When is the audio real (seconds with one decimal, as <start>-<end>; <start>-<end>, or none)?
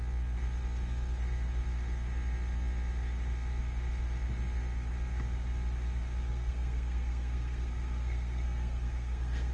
0.0-6.3